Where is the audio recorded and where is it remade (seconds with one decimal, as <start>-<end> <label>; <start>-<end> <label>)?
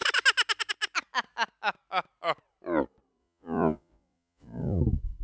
0.0-3.2 recorded; 3.2-4.8 remade; 4.8-5.2 recorded